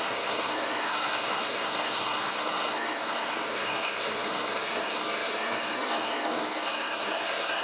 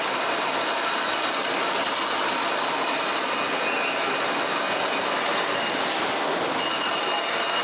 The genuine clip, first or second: second